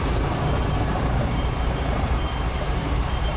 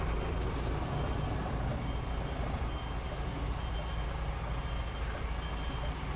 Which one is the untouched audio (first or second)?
second